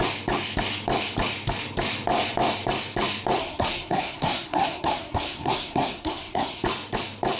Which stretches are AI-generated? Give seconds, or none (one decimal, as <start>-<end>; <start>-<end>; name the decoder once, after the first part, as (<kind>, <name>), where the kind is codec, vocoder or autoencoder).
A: 3.4-6.6 (codec, SNAC)